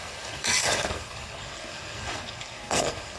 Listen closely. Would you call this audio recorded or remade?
remade